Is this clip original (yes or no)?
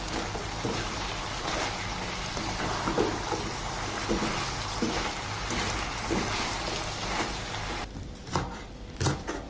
yes